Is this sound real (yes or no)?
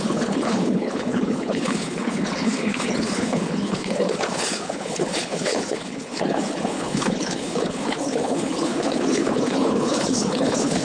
no